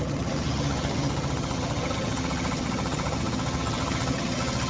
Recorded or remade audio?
remade